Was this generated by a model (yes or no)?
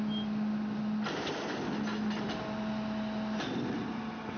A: no